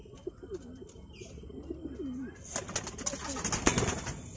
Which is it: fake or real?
real